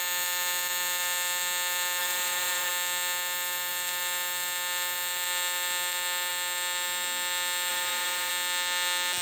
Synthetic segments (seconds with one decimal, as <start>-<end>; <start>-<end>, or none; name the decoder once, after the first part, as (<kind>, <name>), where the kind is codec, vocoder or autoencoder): 2.0-2.7 (vocoder, Vocos); 7.7-8.3